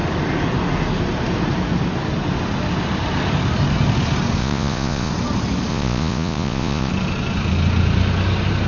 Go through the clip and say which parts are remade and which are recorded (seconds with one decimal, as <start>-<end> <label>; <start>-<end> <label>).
0.0-4.4 recorded; 4.4-5.1 remade; 5.1-5.7 recorded; 5.7-6.9 remade; 6.9-8.7 recorded